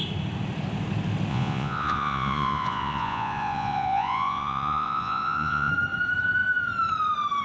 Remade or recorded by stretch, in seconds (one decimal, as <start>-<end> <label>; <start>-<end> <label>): 0.0-1.3 recorded; 1.3-5.7 remade; 5.7-7.4 recorded